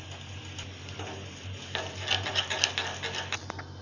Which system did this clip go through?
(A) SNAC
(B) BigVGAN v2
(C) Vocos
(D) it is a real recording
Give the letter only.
D